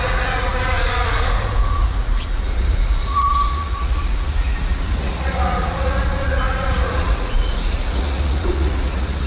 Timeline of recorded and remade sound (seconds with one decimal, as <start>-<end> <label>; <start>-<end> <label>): 0.0-9.3 remade